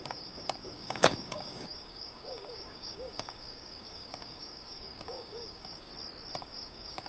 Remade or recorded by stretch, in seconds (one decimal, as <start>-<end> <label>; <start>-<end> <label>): 0.0-5.9 remade; 5.9-6.4 recorded; 6.4-7.1 remade